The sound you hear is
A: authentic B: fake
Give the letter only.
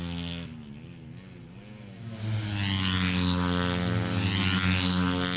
A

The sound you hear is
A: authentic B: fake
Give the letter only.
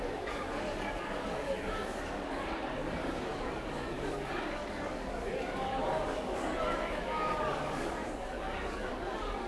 B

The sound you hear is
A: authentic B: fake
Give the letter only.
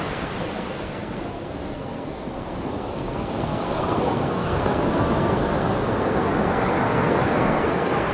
B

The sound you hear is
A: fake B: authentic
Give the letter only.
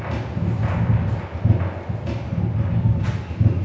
B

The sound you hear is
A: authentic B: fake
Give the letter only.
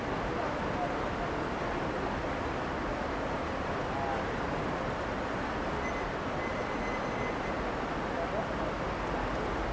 A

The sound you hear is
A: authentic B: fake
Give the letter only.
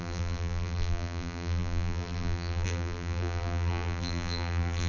B